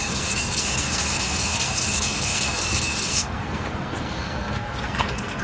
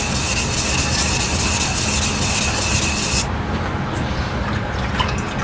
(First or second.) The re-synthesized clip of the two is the first